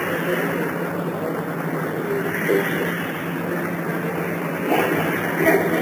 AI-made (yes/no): no